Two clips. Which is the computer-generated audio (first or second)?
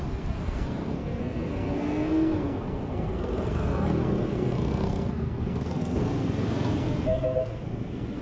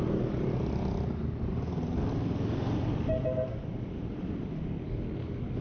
first